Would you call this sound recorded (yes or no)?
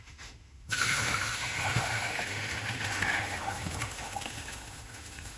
no